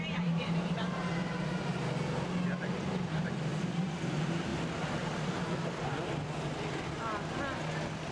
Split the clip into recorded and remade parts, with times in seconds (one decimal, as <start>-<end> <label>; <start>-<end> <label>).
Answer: 0.0-1.0 remade; 1.0-2.9 recorded; 2.9-4.5 remade; 4.5-8.1 recorded